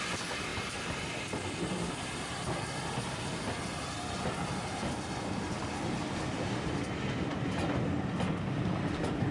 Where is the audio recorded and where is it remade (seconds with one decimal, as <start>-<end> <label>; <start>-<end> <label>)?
0.0-9.3 recorded